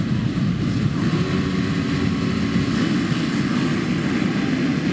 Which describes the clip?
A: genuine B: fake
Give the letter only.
A